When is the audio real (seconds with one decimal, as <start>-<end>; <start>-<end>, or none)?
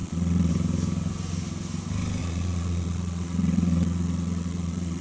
0.5-2.2